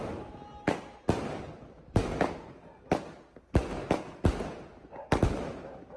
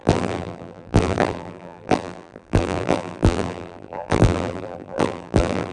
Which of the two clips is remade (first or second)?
second